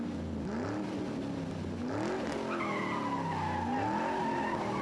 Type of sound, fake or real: real